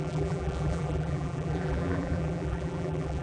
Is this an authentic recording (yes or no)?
no